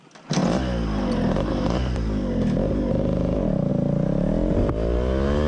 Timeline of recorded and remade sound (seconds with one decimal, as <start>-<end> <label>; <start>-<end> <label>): 0.0-5.5 recorded